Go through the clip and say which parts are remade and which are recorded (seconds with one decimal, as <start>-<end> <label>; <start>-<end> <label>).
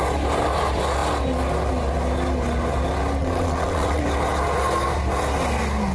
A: 0.0-3.2 recorded; 3.2-4.0 remade; 4.0-5.9 recorded